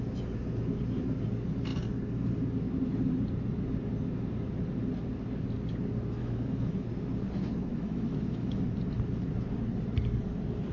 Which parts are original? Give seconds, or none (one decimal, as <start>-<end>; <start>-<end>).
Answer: 0.0-6.2; 6.9-7.7; 8.7-10.7